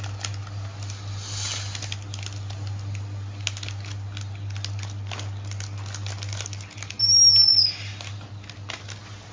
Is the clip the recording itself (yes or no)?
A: yes